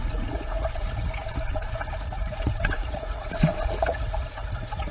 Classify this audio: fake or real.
fake